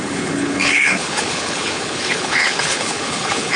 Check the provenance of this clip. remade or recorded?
remade